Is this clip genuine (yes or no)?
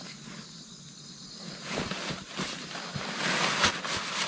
yes